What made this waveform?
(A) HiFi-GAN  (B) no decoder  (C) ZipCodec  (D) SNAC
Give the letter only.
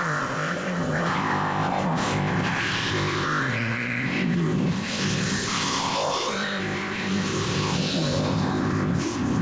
C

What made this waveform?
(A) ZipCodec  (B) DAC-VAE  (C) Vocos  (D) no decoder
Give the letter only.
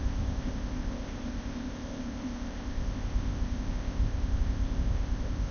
A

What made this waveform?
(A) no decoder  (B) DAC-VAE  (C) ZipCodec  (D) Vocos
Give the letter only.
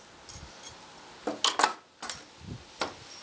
A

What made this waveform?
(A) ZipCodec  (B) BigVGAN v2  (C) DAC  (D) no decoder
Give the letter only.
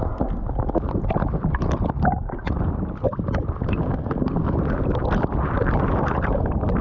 D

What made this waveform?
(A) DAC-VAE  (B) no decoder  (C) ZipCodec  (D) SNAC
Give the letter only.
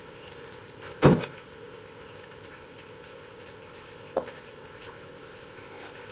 C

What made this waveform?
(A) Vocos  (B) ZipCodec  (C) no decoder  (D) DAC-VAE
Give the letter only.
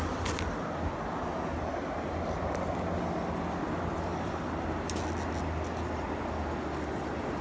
C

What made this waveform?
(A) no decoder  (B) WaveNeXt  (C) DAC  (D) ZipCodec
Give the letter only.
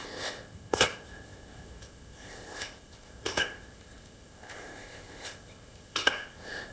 D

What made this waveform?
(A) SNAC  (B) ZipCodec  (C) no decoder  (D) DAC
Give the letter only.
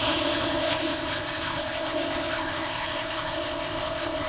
B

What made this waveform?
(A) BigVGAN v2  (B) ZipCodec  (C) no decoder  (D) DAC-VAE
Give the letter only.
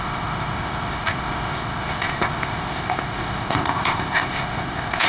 B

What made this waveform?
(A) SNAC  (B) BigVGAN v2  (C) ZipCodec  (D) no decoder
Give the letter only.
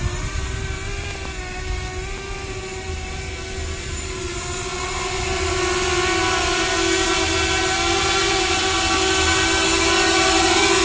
D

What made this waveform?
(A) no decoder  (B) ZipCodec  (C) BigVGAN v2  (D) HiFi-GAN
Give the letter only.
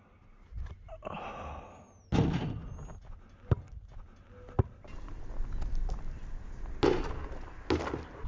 A